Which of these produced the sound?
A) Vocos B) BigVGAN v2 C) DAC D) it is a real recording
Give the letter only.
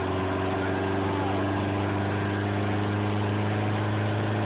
D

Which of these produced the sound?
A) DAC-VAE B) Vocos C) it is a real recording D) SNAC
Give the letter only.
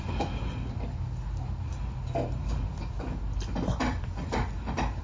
C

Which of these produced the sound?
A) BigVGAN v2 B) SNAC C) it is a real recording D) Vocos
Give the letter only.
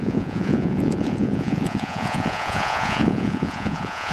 D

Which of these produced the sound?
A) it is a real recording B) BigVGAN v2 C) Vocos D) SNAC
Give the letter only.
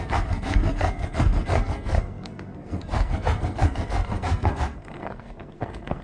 D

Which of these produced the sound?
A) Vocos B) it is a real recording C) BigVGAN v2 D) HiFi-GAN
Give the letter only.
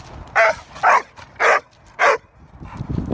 B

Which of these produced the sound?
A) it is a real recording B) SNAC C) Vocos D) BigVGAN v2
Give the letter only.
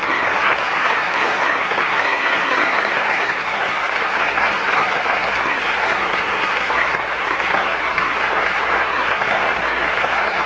B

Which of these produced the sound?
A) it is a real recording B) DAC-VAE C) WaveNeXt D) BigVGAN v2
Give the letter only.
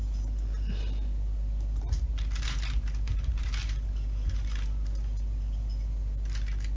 D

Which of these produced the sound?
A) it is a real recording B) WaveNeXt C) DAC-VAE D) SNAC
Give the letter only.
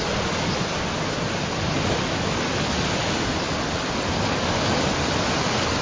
A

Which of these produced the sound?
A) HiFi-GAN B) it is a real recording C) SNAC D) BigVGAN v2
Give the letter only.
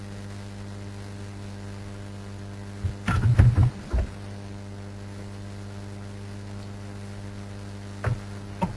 B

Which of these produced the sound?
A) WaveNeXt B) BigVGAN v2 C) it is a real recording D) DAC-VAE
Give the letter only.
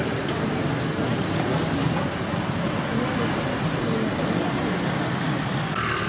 C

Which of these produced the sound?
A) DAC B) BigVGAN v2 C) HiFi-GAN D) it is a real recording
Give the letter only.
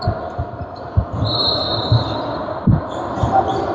D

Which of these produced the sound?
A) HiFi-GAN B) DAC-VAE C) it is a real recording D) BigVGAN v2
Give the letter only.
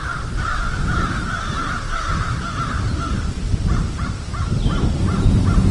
D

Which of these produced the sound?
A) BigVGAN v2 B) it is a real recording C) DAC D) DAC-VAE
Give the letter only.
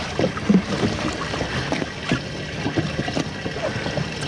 B